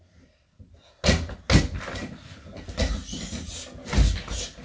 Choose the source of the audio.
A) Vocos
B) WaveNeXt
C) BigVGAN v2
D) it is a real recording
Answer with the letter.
D